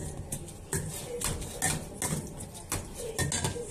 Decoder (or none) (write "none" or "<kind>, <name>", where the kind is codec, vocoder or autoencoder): none